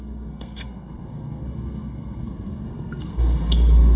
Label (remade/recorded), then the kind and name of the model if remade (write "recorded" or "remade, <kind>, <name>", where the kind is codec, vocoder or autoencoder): remade, codec, SNAC